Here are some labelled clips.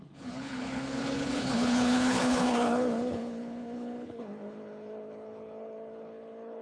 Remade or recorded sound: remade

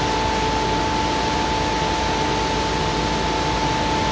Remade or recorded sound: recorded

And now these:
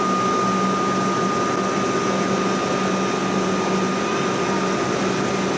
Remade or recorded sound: recorded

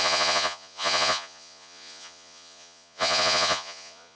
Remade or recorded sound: remade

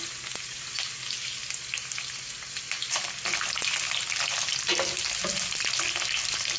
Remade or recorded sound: recorded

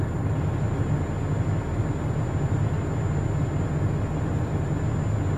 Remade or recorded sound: recorded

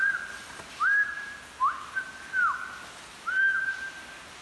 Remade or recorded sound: recorded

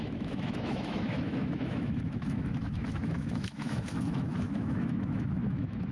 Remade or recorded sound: remade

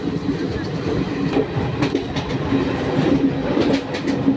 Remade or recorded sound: recorded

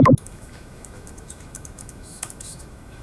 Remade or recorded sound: remade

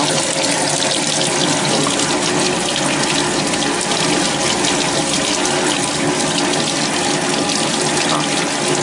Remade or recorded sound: recorded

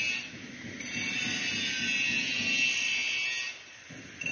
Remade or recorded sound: recorded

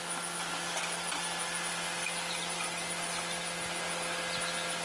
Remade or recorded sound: recorded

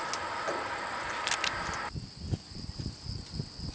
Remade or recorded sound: recorded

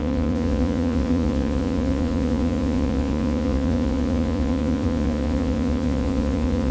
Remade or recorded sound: remade